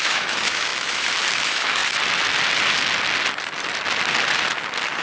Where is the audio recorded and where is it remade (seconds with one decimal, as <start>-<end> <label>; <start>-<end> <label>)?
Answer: 0.0-1.8 remade; 1.8-5.0 recorded